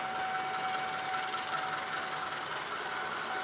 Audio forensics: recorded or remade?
recorded